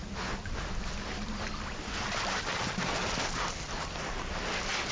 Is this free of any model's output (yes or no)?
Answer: yes